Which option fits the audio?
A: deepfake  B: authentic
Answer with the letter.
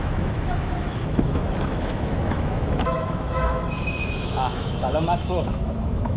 A